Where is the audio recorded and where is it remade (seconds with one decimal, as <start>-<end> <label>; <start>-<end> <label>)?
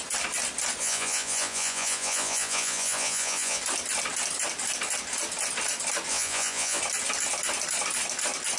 0.0-0.8 recorded; 0.8-3.6 remade; 3.6-6.1 recorded; 6.1-6.8 remade; 6.8-8.6 recorded